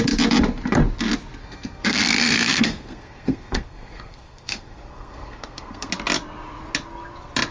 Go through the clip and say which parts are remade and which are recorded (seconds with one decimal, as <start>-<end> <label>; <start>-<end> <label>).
0.0-1.4 recorded; 1.4-5.9 remade; 5.9-7.5 recorded